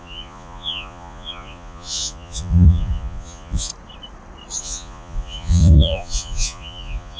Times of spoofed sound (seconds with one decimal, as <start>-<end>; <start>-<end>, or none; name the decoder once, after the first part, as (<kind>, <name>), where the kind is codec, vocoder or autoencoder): 0.0-3.7 (vocoder, Vocos); 4.6-7.2